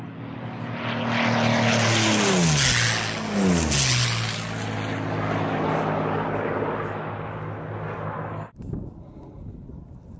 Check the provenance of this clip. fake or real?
real